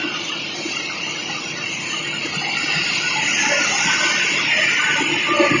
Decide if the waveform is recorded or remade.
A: recorded